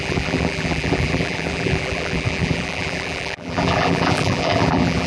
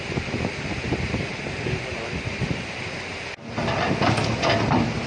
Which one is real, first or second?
second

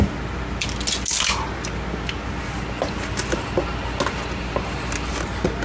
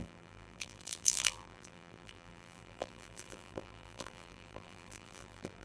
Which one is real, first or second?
first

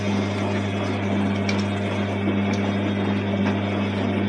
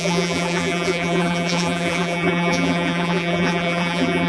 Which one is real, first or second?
first